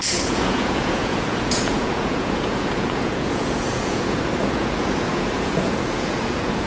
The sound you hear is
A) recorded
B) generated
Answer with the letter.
B